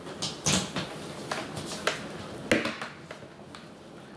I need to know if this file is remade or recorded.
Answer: recorded